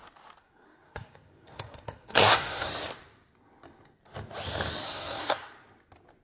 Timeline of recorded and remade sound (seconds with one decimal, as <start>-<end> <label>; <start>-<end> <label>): 0.0-0.4 recorded; 0.4-2.7 remade; 2.7-4.8 recorded; 4.8-5.5 remade; 5.5-6.2 recorded